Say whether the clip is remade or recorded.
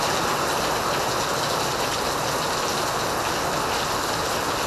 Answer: recorded